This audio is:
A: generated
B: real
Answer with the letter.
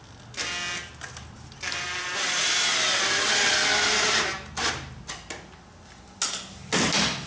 B